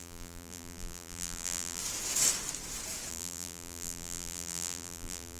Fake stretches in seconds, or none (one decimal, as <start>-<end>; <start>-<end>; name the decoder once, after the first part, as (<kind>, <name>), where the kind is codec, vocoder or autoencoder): 0.0-1.8 (vocoder, BigVGAN v2); 3.1-5.4